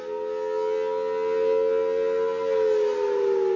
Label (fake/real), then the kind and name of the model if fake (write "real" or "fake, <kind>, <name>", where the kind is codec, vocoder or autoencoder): real